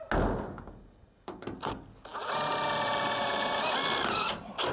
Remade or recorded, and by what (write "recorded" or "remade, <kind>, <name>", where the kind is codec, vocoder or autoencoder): recorded